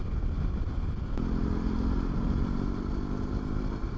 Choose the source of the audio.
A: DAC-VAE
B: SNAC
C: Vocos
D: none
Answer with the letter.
D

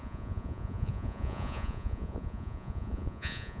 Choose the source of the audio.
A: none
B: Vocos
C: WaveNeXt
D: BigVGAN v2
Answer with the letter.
B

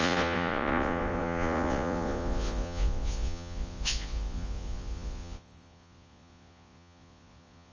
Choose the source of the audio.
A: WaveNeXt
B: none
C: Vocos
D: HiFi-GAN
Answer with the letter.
C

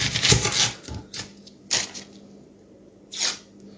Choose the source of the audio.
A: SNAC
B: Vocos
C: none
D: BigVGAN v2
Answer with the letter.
C